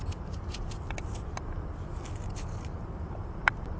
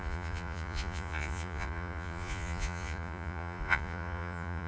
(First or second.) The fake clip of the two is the second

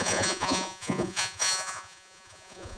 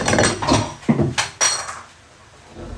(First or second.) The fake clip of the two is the first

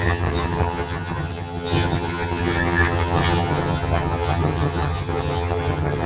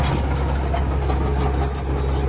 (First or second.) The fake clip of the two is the first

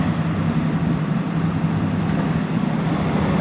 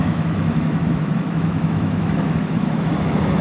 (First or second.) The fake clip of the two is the second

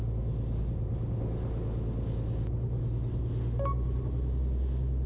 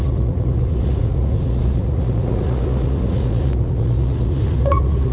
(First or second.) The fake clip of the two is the second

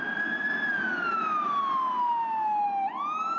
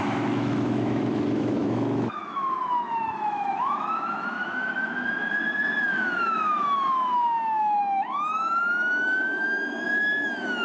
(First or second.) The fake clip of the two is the second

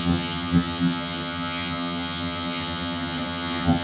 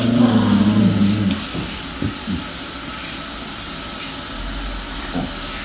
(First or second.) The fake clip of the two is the first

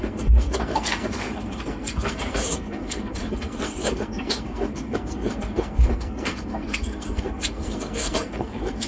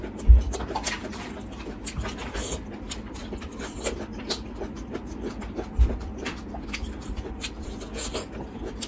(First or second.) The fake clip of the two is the first